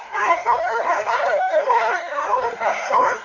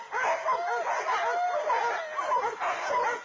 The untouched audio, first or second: second